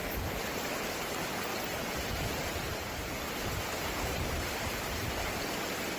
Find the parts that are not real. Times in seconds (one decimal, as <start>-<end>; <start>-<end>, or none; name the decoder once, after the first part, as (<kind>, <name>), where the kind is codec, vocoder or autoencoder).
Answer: 0.0-0.8 (vocoder, BigVGAN v2); 1.5-5.1